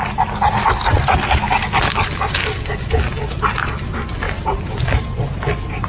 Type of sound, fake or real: real